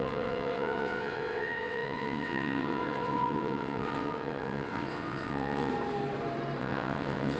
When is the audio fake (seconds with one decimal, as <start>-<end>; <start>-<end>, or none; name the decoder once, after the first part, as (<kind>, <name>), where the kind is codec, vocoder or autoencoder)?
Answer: 0.0-5.7 (vocoder, WaveNeXt); 6.6-7.4